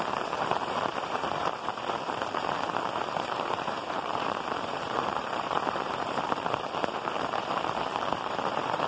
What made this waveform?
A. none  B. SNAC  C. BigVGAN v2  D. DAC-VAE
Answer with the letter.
C